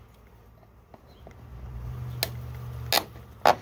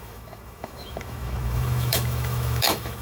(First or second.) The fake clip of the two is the second